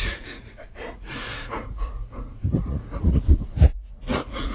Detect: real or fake fake